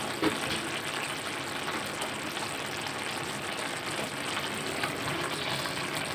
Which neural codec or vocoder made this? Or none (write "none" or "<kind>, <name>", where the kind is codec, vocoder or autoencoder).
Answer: none